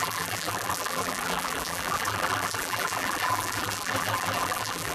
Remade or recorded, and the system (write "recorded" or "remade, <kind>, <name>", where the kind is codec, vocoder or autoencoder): remade, vocoder, BigVGAN v2